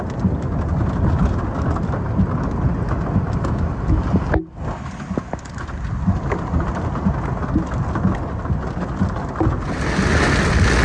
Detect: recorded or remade recorded